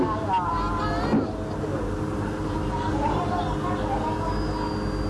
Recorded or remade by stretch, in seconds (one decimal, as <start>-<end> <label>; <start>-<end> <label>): 0.0-1.7 recorded; 1.7-3.3 remade; 3.3-5.1 recorded